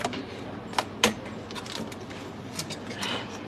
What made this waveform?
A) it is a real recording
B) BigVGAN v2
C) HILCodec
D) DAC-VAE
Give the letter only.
A